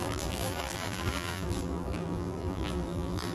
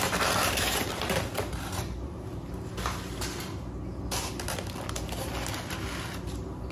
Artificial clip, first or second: first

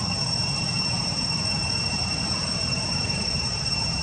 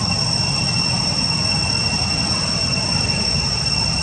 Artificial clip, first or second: first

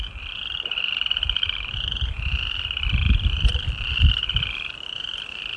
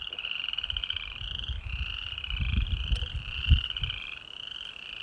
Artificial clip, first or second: first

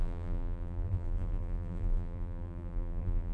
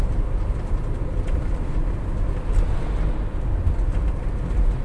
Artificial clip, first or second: first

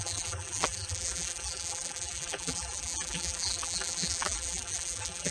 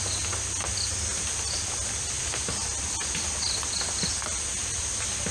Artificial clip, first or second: first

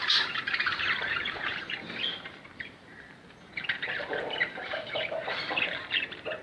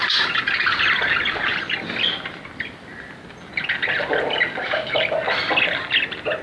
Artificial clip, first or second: first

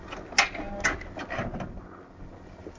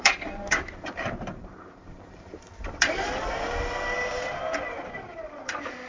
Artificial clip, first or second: second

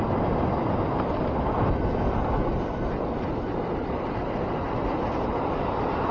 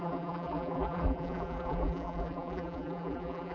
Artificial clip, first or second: second